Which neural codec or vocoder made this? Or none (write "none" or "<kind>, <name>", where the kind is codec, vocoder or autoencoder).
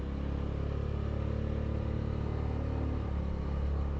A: none